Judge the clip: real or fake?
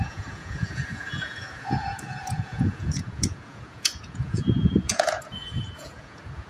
fake